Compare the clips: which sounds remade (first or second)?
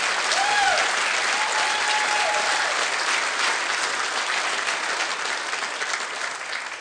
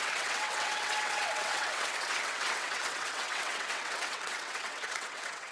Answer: second